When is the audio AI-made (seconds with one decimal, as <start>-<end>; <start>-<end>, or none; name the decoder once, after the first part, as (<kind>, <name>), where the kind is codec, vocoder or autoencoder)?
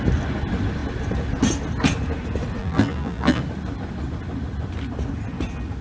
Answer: 2.6-3.4 (vocoder, BigVGAN v2)